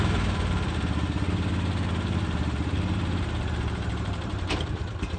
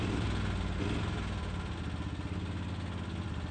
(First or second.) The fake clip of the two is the first